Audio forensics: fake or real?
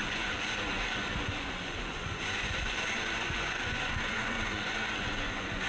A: fake